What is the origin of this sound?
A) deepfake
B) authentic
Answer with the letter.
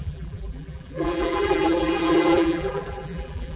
A